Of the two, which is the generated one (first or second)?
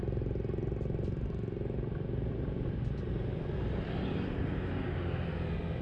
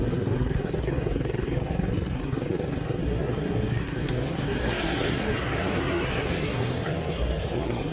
second